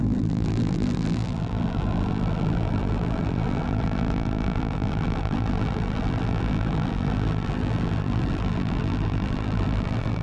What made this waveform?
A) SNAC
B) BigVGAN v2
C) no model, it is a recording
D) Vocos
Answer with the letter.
B